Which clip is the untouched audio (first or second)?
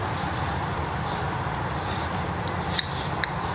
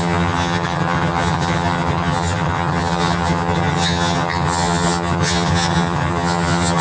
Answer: first